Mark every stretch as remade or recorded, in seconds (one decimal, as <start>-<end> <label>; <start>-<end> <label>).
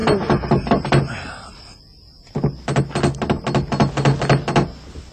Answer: 0.0-5.1 recorded